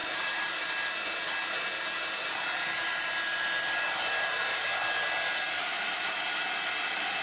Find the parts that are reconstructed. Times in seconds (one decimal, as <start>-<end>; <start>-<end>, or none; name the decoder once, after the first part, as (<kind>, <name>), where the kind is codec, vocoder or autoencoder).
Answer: 0.0-0.6 (vocoder, BigVGAN v2)